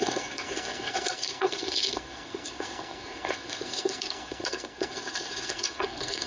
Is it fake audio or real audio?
fake